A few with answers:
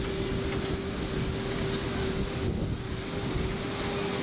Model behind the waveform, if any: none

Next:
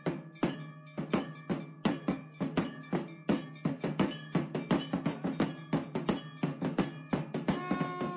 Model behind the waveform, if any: none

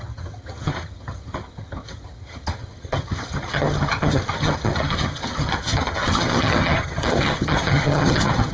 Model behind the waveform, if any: vocoder, HiFi-GAN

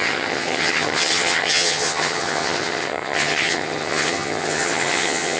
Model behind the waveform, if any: vocoder, HiFi-GAN